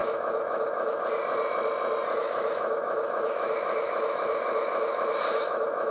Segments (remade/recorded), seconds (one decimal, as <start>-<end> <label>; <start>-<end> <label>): 0.0-1.0 remade; 1.0-2.2 recorded; 2.2-5.9 remade